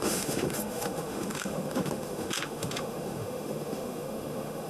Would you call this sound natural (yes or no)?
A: no